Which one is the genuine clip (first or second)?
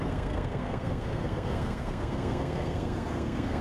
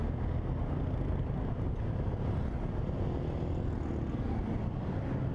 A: second